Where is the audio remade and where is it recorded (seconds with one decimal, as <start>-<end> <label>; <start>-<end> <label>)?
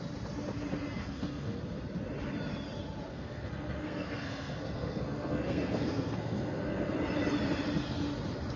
0.0-1.0 recorded; 1.0-1.6 remade; 1.6-3.1 recorded; 3.1-6.9 remade; 6.9-8.6 recorded